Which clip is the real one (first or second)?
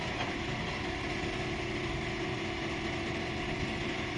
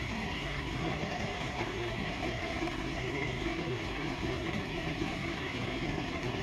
first